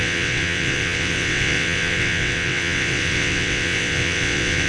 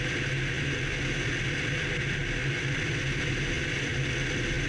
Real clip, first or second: second